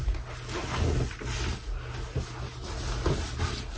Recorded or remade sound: recorded